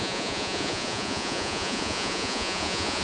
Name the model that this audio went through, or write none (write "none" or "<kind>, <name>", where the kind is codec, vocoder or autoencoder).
vocoder, Vocos